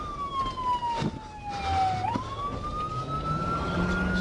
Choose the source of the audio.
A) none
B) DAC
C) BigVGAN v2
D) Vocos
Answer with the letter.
A